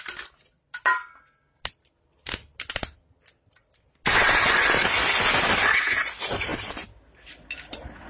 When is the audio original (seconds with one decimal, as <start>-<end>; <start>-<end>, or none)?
0.0-8.1